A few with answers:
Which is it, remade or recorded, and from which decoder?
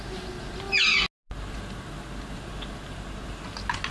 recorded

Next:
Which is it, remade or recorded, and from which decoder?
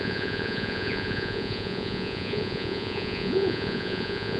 remade, vocoder, Vocos